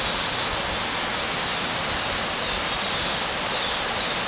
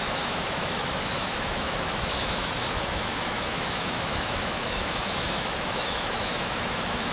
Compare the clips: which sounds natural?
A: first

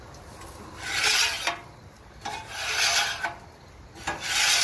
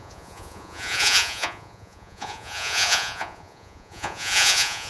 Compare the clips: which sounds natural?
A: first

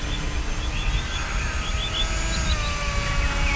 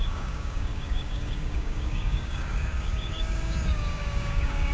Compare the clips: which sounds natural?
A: first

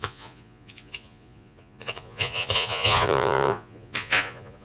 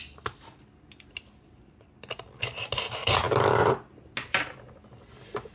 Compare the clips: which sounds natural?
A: second